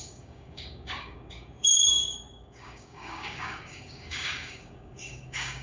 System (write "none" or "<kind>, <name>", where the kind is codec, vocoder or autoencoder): codec, DAC